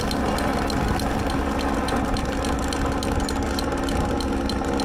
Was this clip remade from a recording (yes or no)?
no